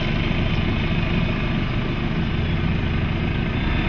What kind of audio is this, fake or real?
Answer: real